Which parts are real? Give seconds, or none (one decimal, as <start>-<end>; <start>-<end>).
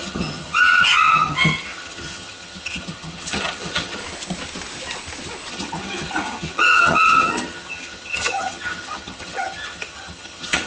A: 4.0-5.5